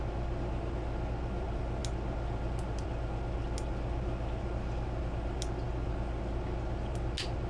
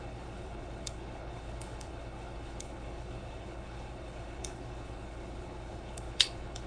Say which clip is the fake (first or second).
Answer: second